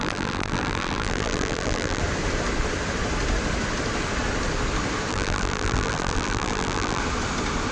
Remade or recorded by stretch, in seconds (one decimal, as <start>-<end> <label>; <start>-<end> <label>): 0.0-2.0 remade; 2.0-5.1 recorded; 5.1-7.0 remade; 7.0-7.7 recorded